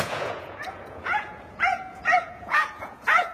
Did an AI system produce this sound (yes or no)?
yes